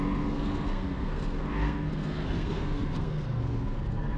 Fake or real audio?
fake